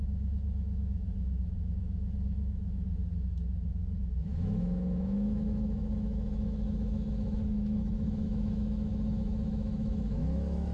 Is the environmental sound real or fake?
fake